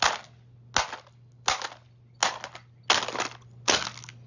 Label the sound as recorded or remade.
recorded